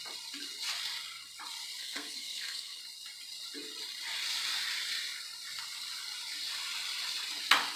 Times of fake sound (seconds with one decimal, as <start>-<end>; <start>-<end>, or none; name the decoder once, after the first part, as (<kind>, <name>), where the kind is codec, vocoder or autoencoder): 1.8-2.8 (codec, SNAC)